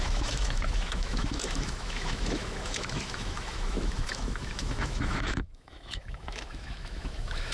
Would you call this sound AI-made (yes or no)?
yes